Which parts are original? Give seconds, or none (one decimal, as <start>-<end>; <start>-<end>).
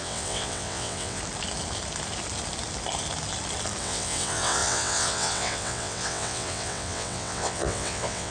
1.2-3.8